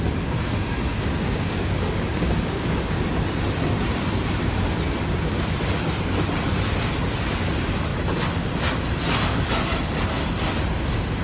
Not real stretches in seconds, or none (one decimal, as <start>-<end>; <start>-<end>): 0.9-3.1